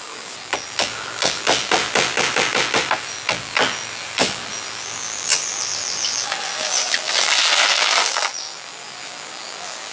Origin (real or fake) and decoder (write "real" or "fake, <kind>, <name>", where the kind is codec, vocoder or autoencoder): fake, vocoder, BigVGAN v2